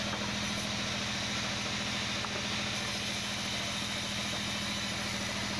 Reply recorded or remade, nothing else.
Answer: recorded